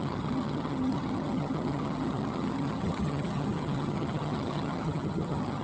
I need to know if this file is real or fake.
fake